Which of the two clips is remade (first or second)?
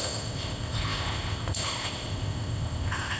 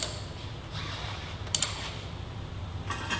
first